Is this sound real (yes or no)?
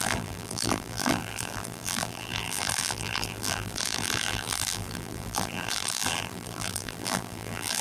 no